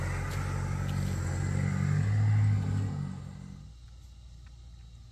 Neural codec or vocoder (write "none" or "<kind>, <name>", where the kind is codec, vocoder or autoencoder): none